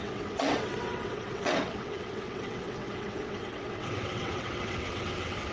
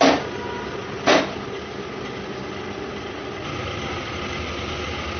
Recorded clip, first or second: second